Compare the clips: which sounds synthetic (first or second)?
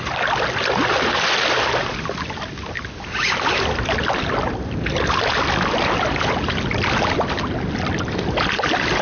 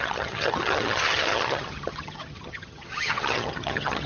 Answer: second